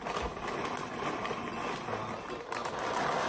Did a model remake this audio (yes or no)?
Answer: no